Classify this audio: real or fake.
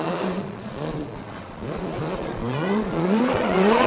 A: fake